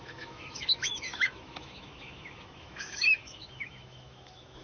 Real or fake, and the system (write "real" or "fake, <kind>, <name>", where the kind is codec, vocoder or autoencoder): fake, autoencoder, DAC-VAE